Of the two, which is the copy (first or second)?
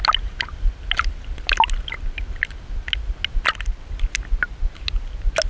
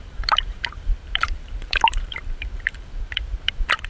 second